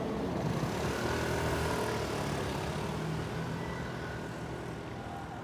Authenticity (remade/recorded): recorded